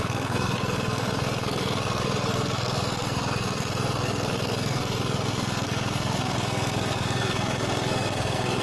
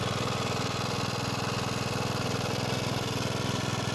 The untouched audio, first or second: second